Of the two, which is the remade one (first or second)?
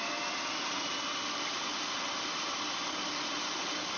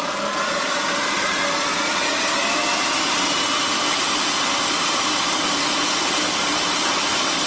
second